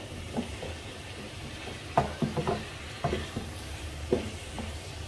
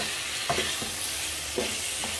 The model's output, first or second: first